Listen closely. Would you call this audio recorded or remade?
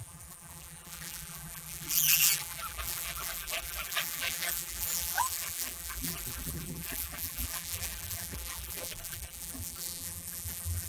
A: remade